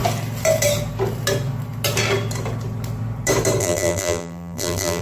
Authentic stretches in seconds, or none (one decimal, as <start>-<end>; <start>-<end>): 0.0-3.6